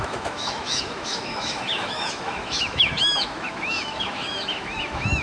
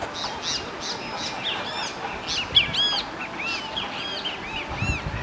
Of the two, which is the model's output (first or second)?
first